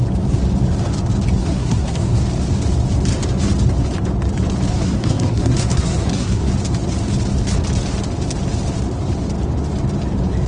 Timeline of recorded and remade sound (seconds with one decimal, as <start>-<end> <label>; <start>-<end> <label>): 0.0-1.4 recorded; 1.4-2.2 remade; 2.2-4.7 recorded; 4.7-6.5 remade; 6.5-10.5 recorded